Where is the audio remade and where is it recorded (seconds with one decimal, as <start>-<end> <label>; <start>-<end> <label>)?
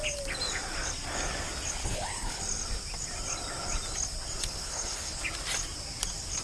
0.0-1.8 recorded; 1.8-2.4 remade; 2.4-4.4 recorded; 4.4-5.2 remade; 5.2-6.4 recorded